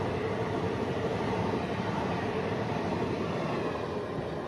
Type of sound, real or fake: real